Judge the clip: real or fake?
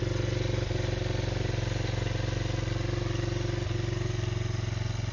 real